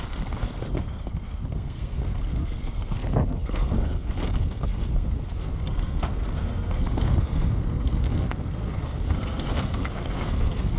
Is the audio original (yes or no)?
no